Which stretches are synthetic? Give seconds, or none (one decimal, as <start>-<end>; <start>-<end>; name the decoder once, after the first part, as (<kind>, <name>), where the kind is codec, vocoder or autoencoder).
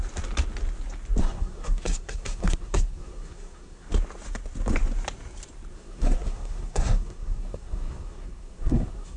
1.2-3.9 (codec, SNAC); 5.7-9.2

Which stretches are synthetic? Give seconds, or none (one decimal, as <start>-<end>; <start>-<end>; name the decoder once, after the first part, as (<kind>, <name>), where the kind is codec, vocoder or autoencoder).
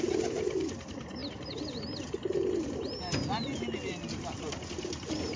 none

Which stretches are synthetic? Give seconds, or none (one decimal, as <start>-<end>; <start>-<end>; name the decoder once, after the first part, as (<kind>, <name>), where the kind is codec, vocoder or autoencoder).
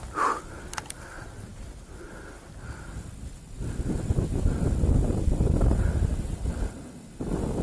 none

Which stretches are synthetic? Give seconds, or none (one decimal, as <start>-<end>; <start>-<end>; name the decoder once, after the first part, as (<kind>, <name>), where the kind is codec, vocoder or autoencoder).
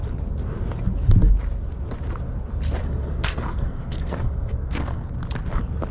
2.8-5.1 (codec, SNAC)